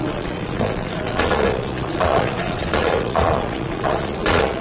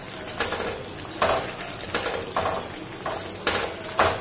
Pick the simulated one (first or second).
first